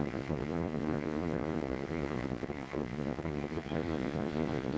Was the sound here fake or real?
fake